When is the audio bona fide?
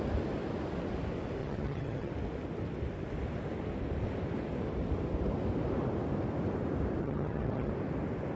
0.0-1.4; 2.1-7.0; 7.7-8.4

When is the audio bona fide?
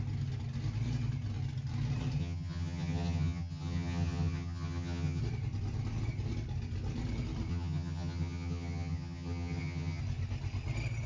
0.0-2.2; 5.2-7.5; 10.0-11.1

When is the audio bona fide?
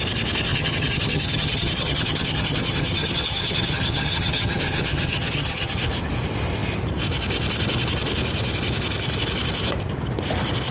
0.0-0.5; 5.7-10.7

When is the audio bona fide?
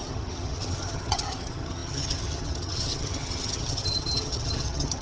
none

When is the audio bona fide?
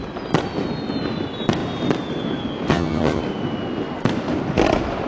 0.0-2.7; 3.2-5.1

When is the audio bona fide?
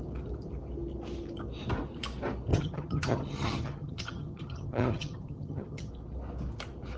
0.0-2.5; 5.9-7.0